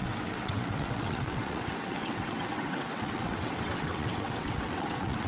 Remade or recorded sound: remade